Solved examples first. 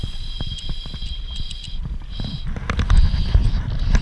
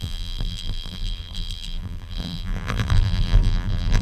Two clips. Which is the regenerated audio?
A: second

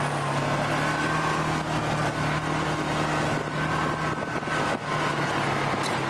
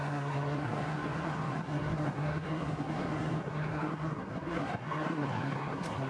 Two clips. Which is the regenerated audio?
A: second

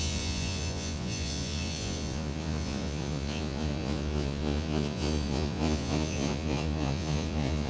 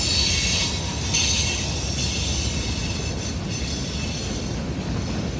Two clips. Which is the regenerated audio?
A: first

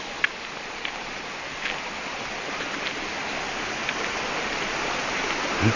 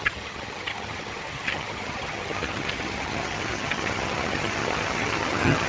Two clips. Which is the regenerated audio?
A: second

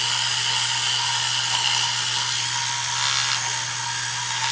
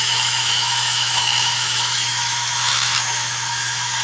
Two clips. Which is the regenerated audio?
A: second